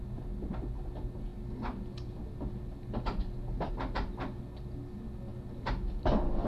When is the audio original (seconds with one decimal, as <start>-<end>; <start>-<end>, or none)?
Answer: 0.0-6.5